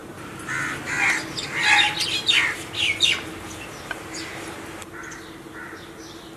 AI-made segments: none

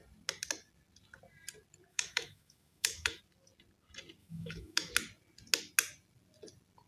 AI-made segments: 1.9-3.2; 4.2-4.9